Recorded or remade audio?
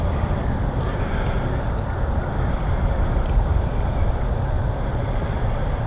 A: remade